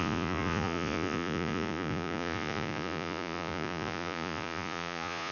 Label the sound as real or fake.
fake